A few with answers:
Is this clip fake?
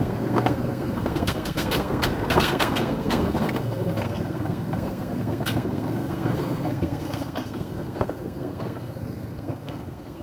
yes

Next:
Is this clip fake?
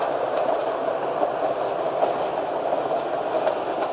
no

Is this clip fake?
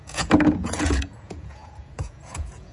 yes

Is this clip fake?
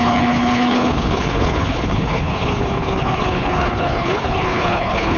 yes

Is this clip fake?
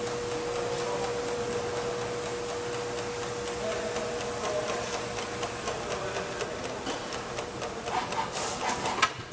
no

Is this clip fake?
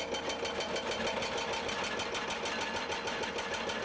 no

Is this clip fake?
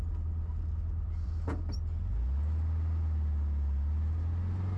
no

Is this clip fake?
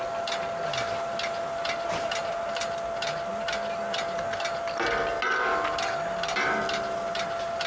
no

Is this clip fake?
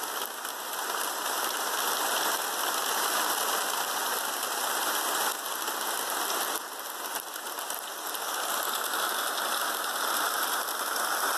no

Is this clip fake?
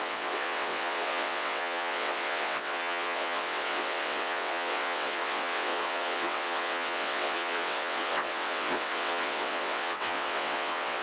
yes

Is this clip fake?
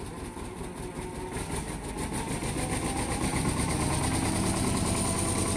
no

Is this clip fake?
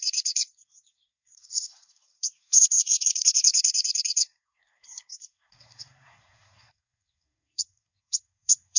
yes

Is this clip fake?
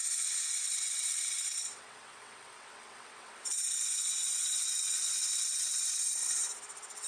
yes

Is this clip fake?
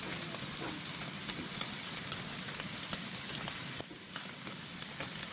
no